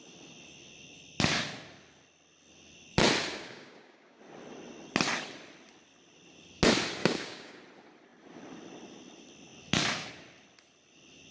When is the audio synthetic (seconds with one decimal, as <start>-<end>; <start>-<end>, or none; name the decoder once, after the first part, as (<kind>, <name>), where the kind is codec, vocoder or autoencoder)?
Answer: 3.3-4.2 (codec, DAC); 7.0-7.6